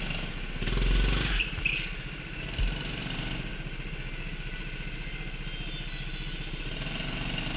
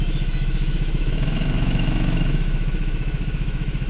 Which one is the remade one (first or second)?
second